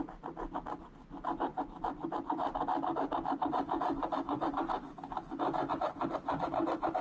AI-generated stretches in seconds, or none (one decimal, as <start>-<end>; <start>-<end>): none